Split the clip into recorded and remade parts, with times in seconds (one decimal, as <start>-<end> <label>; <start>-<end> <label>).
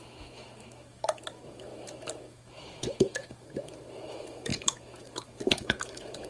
0.0-6.3 remade